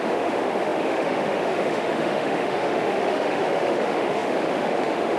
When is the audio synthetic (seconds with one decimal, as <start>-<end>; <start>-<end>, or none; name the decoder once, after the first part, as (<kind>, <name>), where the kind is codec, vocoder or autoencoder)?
0.0-5.2 (autoencoder, DAC-VAE)